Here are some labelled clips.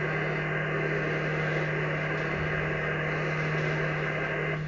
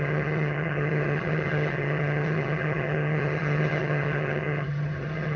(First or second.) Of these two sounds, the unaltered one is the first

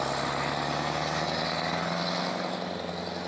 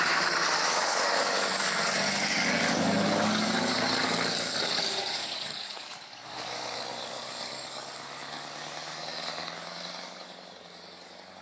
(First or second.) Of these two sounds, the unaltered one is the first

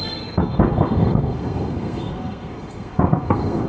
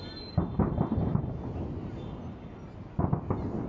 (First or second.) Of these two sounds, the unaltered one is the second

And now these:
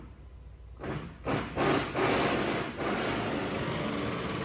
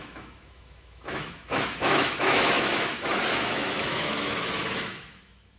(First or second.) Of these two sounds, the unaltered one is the first